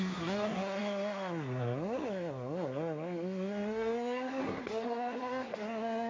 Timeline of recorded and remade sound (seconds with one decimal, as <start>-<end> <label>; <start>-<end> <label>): 0.0-6.1 remade